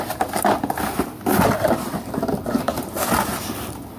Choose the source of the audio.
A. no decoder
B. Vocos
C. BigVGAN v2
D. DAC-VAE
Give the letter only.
A